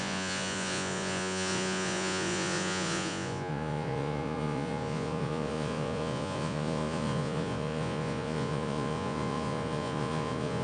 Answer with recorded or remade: remade